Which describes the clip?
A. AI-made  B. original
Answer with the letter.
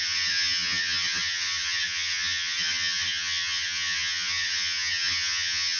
A